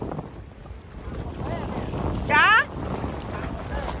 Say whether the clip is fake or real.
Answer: real